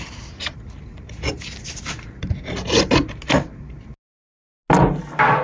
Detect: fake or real real